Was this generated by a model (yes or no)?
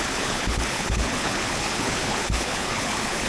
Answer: yes